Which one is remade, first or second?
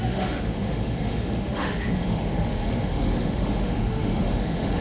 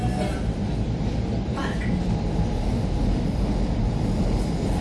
first